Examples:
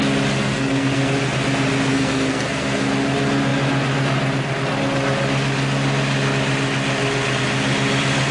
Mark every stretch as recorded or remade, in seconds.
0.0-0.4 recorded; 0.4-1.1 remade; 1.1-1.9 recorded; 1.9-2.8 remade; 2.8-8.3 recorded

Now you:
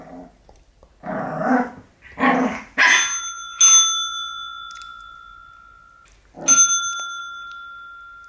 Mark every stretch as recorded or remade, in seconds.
0.0-8.3 recorded

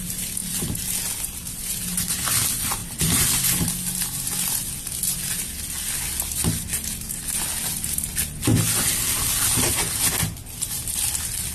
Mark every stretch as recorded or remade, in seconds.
0.0-0.4 recorded; 0.4-1.7 remade; 1.7-2.8 recorded; 2.8-3.4 remade; 3.4-11.5 recorded

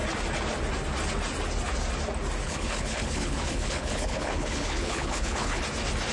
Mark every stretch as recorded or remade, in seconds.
0.0-2.4 recorded; 2.4-5.6 remade; 5.6-6.1 recorded

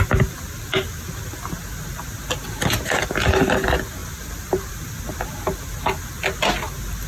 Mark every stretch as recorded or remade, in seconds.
0.0-4.0 recorded; 4.0-4.7 remade; 4.7-7.1 recorded

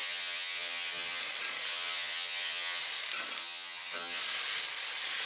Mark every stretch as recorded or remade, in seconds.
0.0-1.2 remade; 1.2-1.7 recorded; 1.7-2.8 remade; 2.8-3.4 recorded; 3.4-4.2 remade; 4.2-5.3 recorded

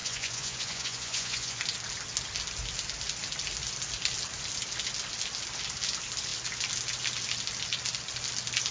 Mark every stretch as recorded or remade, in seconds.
0.0-1.6 remade; 1.6-8.7 recorded